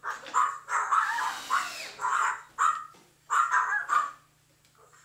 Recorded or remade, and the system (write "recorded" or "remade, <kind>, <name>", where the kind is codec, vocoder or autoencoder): recorded